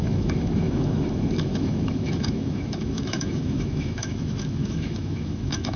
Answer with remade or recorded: remade